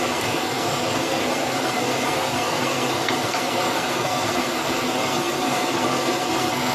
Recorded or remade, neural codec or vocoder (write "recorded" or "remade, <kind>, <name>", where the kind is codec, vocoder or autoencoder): remade, codec, SNAC